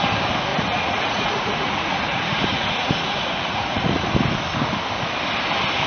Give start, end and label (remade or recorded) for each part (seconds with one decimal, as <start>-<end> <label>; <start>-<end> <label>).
0.0-0.5 recorded; 0.5-4.0 remade; 4.0-5.9 recorded